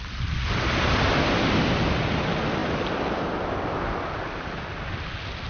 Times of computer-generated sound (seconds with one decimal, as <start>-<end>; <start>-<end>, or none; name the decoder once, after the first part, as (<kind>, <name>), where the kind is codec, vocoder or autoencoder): none